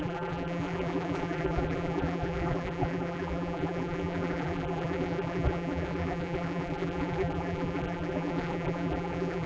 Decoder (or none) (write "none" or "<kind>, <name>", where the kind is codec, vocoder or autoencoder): vocoder, BigVGAN v2